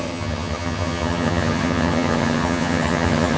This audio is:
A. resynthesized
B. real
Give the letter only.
A